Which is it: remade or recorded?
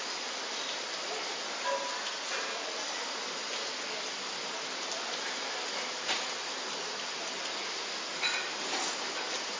recorded